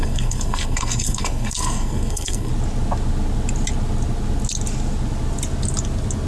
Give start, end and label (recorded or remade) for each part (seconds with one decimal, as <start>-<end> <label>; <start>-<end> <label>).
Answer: 0.0-2.5 remade; 2.5-6.3 recorded